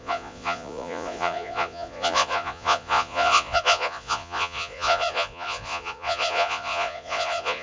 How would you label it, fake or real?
fake